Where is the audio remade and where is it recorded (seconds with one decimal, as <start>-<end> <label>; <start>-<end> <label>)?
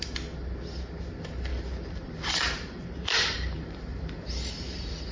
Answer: 0.0-1.5 recorded; 1.5-4.5 remade; 4.5-5.1 recorded